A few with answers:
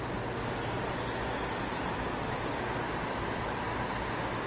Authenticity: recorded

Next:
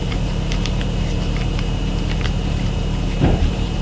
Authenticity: remade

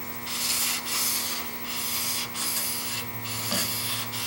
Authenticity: recorded